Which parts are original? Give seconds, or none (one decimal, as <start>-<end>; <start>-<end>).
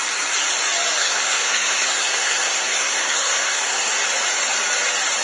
0.0-1.0; 3.9-5.2